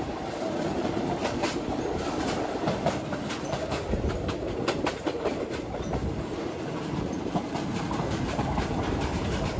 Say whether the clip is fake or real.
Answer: fake